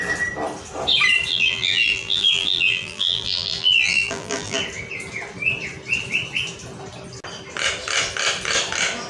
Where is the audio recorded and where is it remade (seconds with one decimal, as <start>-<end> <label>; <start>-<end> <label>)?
0.0-1.3 recorded; 1.3-4.6 remade; 4.6-9.1 recorded